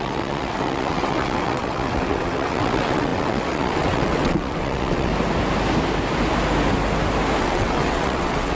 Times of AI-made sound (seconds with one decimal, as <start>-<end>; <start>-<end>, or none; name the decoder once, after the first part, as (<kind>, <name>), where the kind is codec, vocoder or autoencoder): 0.0-5.1 (vocoder, WaveNeXt); 7.4-8.6